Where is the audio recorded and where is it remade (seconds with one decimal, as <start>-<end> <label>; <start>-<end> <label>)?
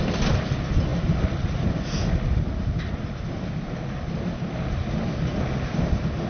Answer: 0.0-6.3 recorded